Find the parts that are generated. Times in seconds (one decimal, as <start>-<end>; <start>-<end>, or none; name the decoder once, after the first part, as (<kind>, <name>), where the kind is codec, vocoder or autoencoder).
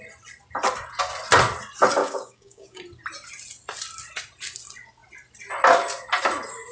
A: 2.0-2.8 (codec, DAC)